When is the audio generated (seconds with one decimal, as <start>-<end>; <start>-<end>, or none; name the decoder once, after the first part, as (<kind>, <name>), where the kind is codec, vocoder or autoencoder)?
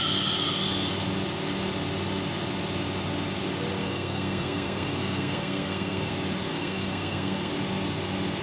3.8-6.1 (codec, SNAC); 6.5-7.5